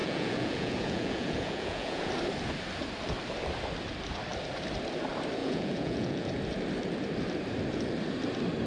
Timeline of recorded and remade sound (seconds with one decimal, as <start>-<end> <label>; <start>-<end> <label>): 0.0-2.1 remade; 2.1-5.4 recorded; 5.4-6.3 remade; 6.3-8.7 recorded